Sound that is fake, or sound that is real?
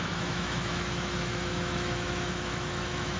fake